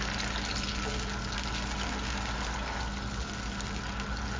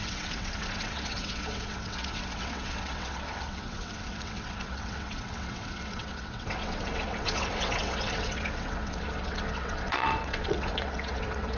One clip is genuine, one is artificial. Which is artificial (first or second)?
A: second